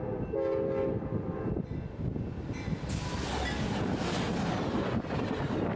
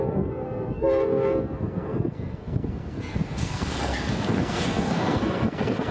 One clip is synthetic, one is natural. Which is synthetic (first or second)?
second